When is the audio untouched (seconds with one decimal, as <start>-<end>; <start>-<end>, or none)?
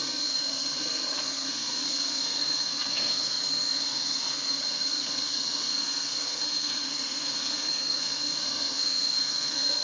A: none